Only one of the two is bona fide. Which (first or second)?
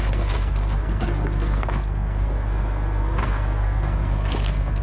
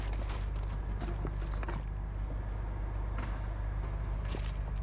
second